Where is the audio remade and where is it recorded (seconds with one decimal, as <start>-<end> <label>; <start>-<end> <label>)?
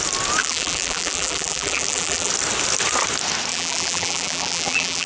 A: 0.0-0.4 recorded; 0.4-2.3 remade; 2.3-3.5 recorded; 3.5-5.1 remade